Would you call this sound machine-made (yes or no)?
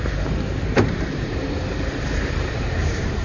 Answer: yes